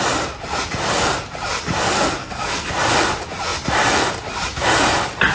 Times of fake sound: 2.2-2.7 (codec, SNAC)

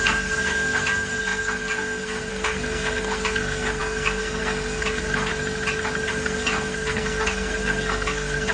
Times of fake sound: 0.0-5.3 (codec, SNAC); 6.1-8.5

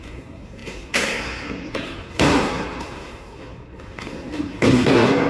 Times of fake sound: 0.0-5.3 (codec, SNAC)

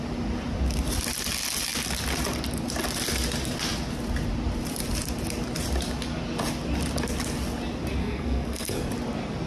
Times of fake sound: 8.0-8.9 (codec, SNAC)

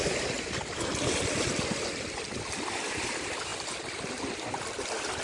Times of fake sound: none

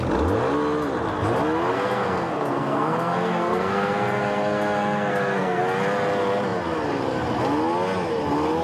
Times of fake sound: 1.7-5.6 (codec, SNAC)